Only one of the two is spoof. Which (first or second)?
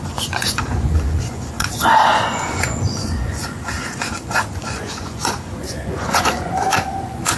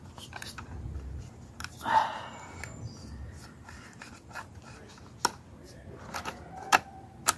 first